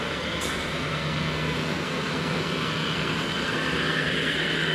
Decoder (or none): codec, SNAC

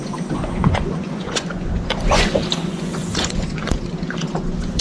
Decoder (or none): vocoder, Vocos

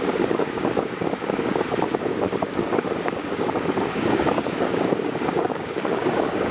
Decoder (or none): codec, DAC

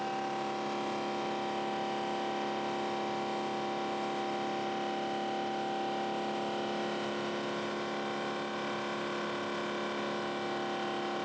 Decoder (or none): none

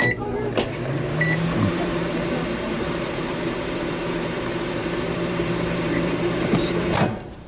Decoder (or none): vocoder, BigVGAN v2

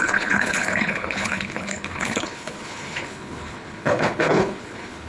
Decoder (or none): codec, HILCodec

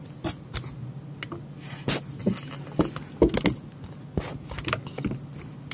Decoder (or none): none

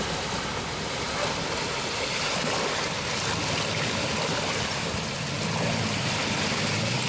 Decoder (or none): none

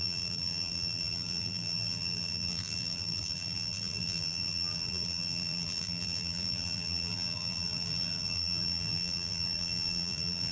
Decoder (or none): vocoder, BigVGAN v2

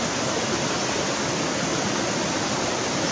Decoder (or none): none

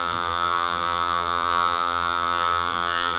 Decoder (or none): vocoder, BigVGAN v2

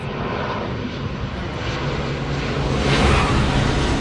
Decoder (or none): none